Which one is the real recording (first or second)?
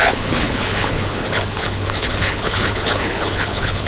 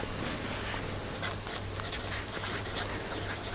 second